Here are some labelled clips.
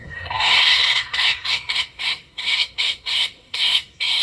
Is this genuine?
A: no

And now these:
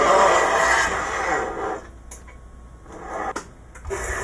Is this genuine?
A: yes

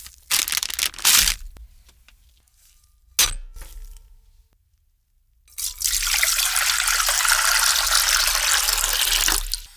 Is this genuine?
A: yes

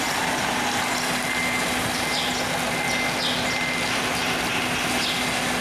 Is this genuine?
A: yes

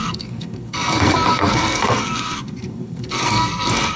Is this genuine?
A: no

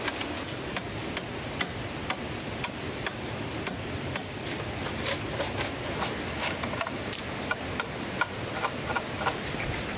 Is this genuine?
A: yes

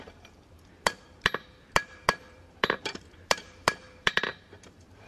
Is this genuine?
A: no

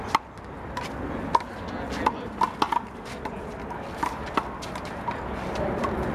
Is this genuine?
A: yes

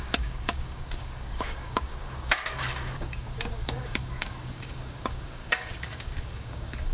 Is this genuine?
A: no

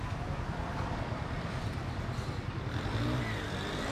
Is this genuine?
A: yes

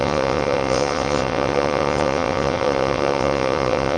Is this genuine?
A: no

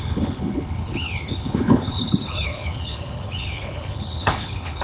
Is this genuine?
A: no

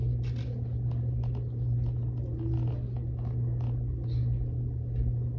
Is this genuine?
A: yes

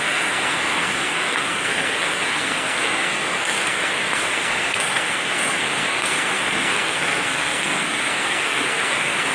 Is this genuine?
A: no